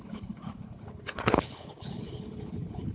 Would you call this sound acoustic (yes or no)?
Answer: no